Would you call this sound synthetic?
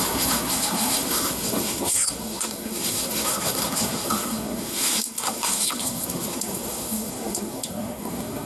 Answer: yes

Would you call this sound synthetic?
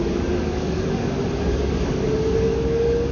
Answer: yes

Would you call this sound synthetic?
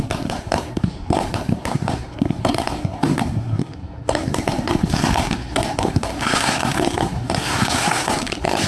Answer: yes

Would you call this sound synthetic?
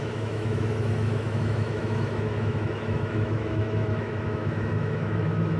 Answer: yes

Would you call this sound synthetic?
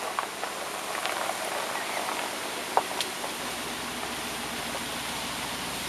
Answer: no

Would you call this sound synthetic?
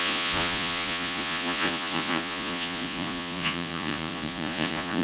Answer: yes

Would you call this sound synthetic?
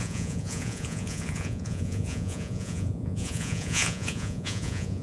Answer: yes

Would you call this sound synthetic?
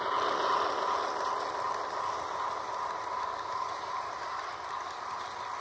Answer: no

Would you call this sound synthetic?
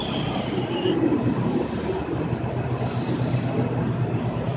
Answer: no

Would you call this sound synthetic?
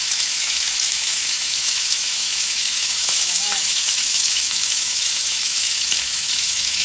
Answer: yes